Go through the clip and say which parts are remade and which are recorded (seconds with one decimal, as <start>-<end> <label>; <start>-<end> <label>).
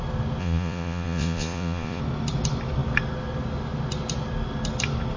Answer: 0.0-0.4 recorded; 0.4-2.0 remade; 2.0-5.2 recorded